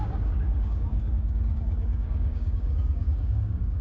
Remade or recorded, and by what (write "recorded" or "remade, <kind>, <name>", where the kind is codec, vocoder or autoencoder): remade, codec, DAC